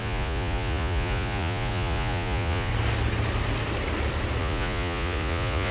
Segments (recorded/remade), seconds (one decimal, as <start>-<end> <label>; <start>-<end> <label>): 0.0-2.7 remade; 2.7-4.4 recorded; 4.4-5.7 remade